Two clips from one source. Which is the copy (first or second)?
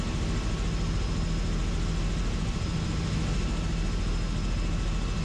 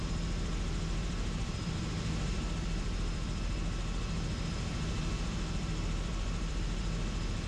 second